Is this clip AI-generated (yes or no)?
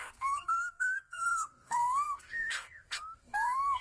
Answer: yes